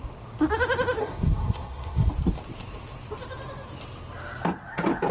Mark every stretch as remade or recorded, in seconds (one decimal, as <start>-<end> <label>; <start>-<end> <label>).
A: 0.0-1.0 recorded; 1.0-2.1 remade; 2.1-5.1 recorded